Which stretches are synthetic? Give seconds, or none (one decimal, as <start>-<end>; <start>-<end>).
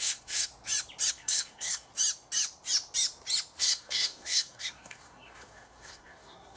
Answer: 0.0-0.5; 1.1-1.9; 3.6-6.6